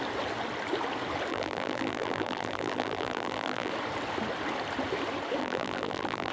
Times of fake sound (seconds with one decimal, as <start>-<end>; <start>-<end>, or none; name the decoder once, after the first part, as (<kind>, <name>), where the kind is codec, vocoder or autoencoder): 1.3-3.7 (vocoder, BigVGAN v2); 5.4-6.3